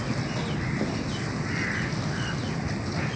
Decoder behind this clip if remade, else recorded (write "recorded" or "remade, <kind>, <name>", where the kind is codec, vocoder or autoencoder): recorded